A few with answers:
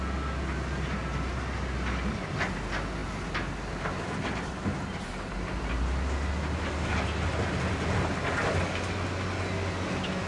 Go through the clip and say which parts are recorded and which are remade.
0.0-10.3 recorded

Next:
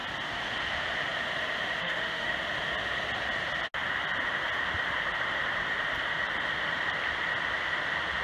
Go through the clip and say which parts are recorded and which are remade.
0.0-1.8 recorded; 1.8-2.3 remade; 2.3-8.2 recorded

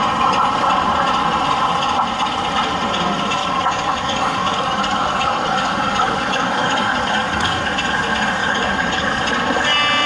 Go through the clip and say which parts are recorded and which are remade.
0.0-3.4 recorded; 3.4-7.6 remade; 7.6-8.4 recorded; 8.4-9.2 remade; 9.2-10.1 recorded

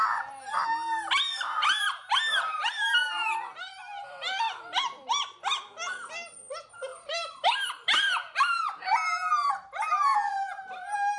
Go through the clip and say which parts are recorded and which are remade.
0.0-1.3 recorded; 1.3-5.1 remade; 5.1-6.9 recorded; 6.9-9.5 remade; 9.5-10.1 recorded; 10.1-11.2 remade